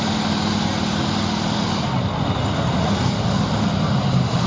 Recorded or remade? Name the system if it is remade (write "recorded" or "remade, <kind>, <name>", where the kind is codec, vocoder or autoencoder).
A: recorded